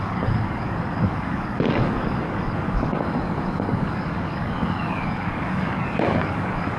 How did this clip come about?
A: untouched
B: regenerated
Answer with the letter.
B